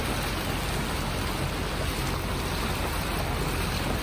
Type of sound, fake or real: real